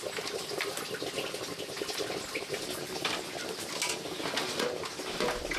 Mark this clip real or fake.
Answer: real